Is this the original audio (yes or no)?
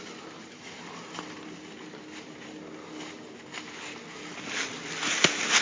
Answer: yes